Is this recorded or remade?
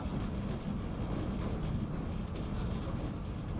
recorded